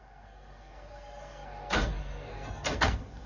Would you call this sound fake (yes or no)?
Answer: yes